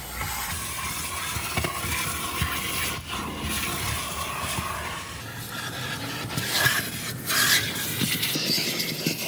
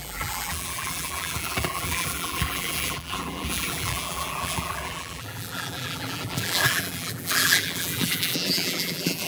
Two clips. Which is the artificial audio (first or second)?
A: second